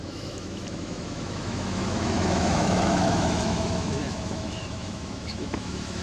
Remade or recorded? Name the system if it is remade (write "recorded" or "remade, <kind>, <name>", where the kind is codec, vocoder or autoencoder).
remade, autoencoder, DAC-VAE